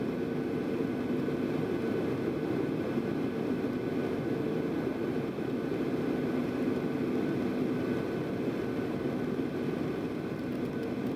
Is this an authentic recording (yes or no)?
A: yes